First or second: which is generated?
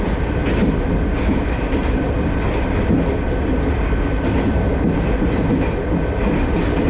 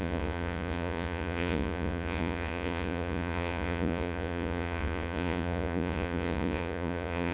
second